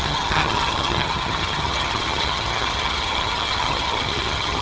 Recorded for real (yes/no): no